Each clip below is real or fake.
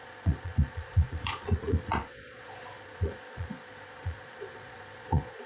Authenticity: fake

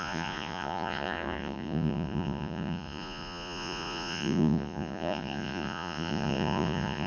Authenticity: fake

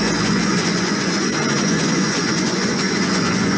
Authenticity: fake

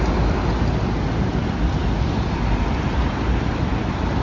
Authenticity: real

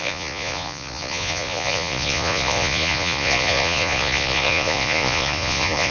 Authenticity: fake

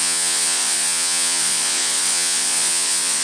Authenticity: fake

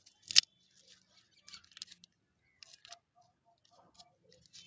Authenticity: real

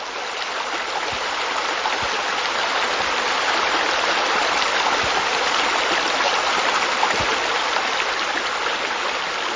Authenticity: real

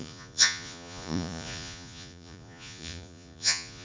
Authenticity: fake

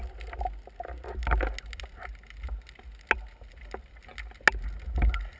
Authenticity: real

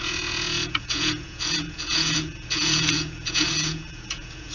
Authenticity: fake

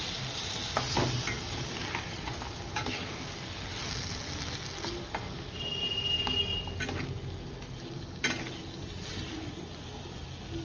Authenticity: real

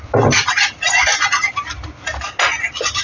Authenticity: real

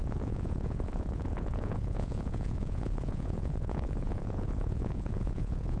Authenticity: fake